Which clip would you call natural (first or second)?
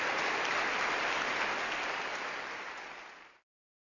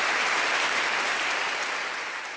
first